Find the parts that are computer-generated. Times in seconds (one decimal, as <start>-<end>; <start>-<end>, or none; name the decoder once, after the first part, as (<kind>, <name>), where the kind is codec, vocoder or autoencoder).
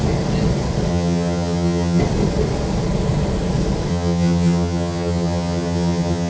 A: 0.9-2.0 (vocoder, HiFi-GAN); 3.9-6.3